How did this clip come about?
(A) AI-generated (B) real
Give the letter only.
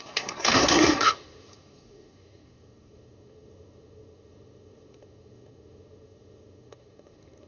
A